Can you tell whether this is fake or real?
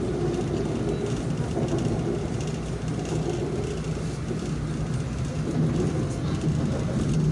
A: real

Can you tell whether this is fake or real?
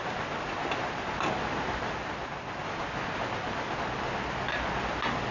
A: real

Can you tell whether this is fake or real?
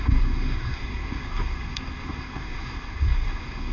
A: fake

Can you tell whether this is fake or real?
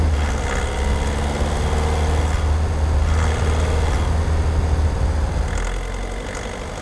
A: real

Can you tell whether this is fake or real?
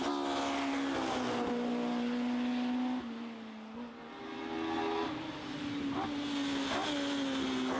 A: real